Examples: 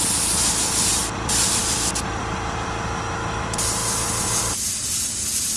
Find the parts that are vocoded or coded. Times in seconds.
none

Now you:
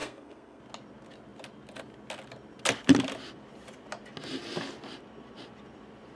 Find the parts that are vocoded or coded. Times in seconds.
0.0-0.6 (codec, SNAC)